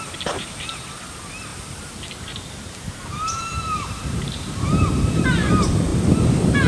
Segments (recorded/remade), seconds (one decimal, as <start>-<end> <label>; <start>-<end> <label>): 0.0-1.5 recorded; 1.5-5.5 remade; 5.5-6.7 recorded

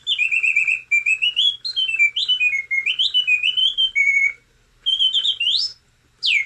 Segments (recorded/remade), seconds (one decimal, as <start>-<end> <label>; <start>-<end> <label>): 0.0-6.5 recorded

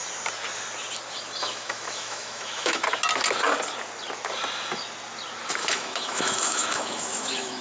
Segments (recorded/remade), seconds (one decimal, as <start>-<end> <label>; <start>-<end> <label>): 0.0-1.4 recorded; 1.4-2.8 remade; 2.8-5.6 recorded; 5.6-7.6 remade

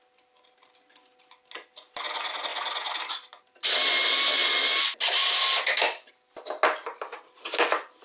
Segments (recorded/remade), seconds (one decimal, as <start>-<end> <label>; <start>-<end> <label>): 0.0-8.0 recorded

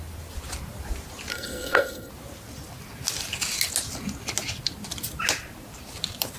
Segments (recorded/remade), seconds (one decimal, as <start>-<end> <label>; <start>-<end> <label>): 0.0-1.3 recorded; 1.3-2.1 remade; 2.1-6.4 recorded